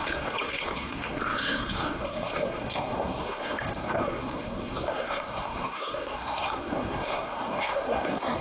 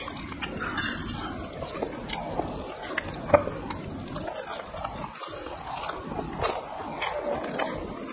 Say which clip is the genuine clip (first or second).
second